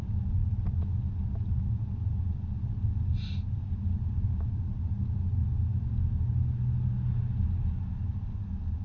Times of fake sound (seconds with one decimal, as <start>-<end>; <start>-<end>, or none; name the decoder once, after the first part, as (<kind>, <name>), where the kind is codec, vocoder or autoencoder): none